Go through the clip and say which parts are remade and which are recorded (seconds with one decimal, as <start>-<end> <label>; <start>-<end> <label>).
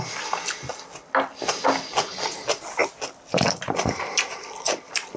0.0-5.2 recorded